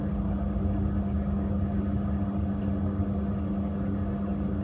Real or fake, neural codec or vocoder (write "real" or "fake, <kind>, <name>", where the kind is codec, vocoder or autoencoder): real